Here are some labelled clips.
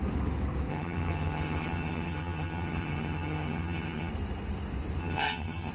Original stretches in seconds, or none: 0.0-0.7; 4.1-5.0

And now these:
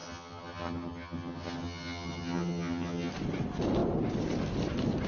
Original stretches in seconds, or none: 3.1-5.1

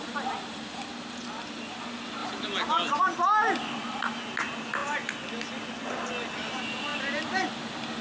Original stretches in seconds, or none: 0.0-8.0

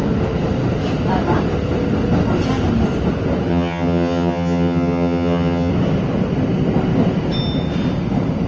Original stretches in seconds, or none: 0.0-3.5; 5.7-8.5

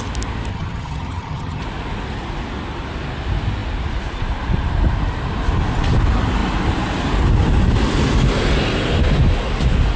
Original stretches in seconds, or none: 0.0-0.5; 1.6-10.0

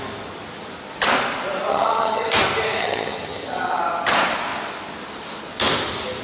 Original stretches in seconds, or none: 0.0-1.7; 2.3-2.8; 3.8-6.2